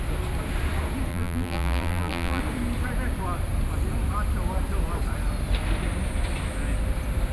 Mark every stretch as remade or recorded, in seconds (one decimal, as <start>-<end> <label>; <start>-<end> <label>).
0.0-1.1 recorded; 1.1-2.4 remade; 2.4-7.3 recorded